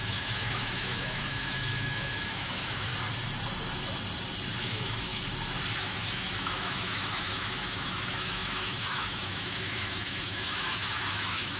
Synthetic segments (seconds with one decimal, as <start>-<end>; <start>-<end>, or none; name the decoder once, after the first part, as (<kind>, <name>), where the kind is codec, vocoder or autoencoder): 0.0-2.9 (autoencoder, DAC-VAE); 4.6-5.1; 5.8-11.6